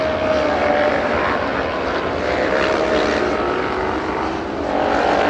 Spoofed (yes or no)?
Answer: no